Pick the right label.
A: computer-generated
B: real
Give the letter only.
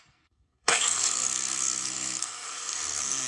A